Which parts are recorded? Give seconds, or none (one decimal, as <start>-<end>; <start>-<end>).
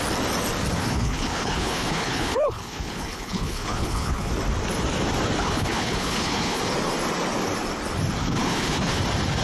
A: 0.0-0.8; 4.3-5.4; 6.6-8.2; 9.0-9.4